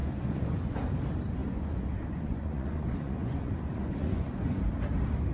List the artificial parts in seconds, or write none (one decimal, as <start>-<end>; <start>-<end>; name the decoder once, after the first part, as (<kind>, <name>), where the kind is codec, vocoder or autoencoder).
0.0-0.9 (vocoder, Vocos); 1.4-4.6